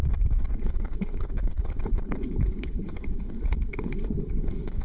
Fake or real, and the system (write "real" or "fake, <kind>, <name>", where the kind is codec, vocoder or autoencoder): fake, codec, HILCodec